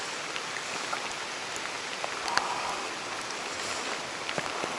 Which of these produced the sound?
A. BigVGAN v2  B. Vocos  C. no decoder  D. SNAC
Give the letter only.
C